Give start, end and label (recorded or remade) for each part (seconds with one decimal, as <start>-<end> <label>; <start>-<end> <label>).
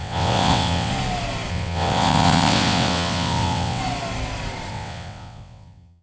0.0-0.9 remade; 0.9-1.5 recorded; 1.5-3.8 remade; 3.8-4.7 recorded; 4.7-6.0 remade